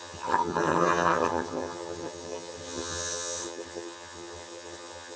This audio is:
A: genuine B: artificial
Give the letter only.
B